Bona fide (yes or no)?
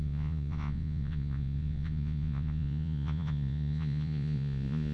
no